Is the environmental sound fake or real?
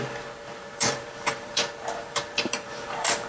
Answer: fake